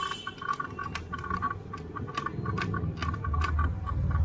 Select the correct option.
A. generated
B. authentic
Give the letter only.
B